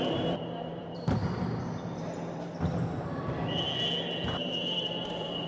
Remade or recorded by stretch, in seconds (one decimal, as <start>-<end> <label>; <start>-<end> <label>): 0.0-1.2 remade; 1.2-4.4 recorded; 4.4-5.5 remade

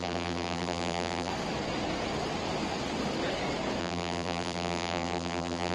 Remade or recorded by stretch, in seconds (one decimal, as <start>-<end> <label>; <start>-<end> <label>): 0.0-1.3 remade; 1.3-3.8 recorded; 3.8-5.7 remade

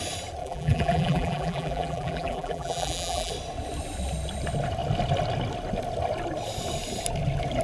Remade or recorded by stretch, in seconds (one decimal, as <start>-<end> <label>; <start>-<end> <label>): 0.0-0.4 recorded; 0.4-3.3 remade; 3.3-7.6 recorded

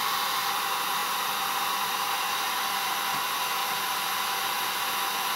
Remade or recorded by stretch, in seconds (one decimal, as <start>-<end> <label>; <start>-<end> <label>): 0.0-3.6 recorded; 3.6-4.2 remade; 4.2-5.4 recorded

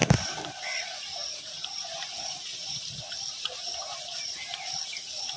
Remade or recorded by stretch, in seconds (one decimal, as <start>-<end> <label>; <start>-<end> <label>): 0.0-1.2 recorded; 1.2-4.4 remade; 4.4-5.4 recorded

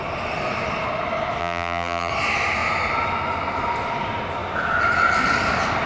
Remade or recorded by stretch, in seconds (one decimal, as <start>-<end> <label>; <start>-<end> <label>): 0.0-1.4 recorded; 1.4-2.1 remade; 2.1-5.9 recorded

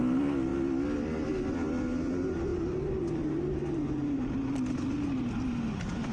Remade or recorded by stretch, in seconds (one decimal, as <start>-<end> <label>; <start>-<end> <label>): 0.0-6.1 recorded